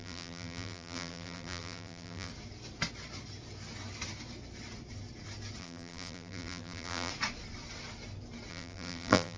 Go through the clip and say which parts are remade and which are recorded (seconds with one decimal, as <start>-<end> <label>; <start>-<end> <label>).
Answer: 0.0-2.3 remade; 2.3-5.6 recorded; 5.6-7.1 remade; 7.1-8.5 recorded; 8.5-9.4 remade

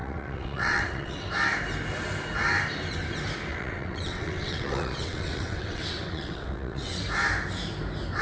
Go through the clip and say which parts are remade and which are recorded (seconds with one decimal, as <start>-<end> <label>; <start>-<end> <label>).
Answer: 0.0-1.3 remade; 1.3-3.5 recorded; 3.5-7.0 remade; 7.0-8.2 recorded

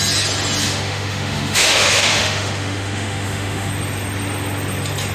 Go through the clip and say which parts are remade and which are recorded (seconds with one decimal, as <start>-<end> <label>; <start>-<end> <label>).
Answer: 0.0-0.6 recorded; 0.6-3.7 remade; 3.7-5.1 recorded

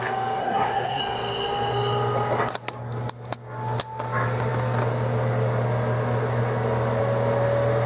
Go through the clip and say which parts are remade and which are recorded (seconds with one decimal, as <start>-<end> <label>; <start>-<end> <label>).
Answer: 0.0-0.4 recorded; 0.4-1.0 remade; 1.0-7.9 recorded

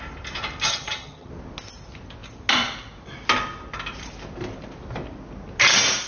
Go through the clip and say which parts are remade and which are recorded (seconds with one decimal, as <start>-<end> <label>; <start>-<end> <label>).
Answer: 0.0-0.7 recorded; 0.7-1.3 remade; 1.3-6.1 recorded

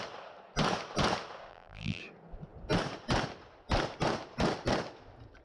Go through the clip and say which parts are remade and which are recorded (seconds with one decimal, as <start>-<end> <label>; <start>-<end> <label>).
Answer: 0.0-1.5 recorded; 1.5-2.0 remade; 2.0-5.4 recorded

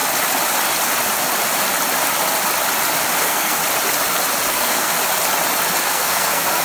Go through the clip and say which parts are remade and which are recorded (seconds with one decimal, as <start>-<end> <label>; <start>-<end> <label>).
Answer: 0.0-3.2 recorded; 3.2-3.6 remade; 3.6-4.5 recorded; 4.5-5.0 remade; 5.0-5.8 recorded; 5.8-6.6 remade

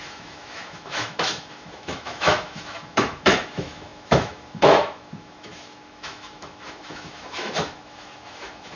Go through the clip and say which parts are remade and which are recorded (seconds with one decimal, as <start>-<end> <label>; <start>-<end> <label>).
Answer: 0.0-8.8 remade